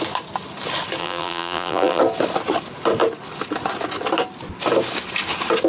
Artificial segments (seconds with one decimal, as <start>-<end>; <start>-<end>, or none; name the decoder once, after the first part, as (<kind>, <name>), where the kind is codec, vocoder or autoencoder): 1.0-2.0 (vocoder, BigVGAN v2)